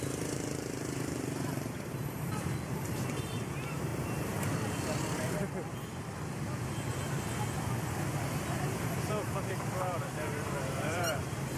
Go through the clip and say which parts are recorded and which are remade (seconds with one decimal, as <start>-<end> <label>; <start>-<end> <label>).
0.0-3.9 remade; 3.9-8.5 recorded; 8.5-11.6 remade